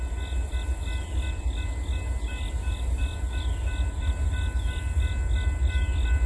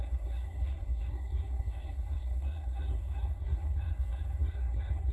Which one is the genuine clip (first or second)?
first